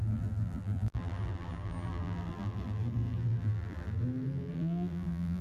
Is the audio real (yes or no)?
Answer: no